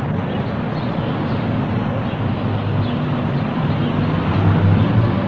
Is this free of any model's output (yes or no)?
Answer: yes